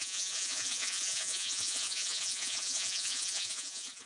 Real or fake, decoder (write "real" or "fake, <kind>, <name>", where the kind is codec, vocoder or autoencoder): fake, vocoder, Vocos